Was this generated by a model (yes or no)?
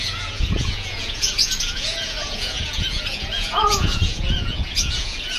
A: yes